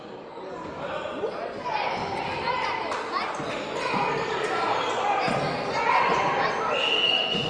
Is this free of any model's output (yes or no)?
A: yes